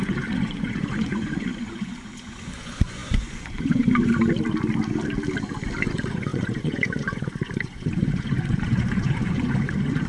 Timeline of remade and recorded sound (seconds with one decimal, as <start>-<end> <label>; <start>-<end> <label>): 0.0-4.1 remade; 4.1-5.8 recorded; 5.8-10.1 remade